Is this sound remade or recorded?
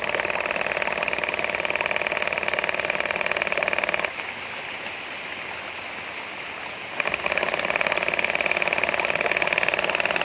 recorded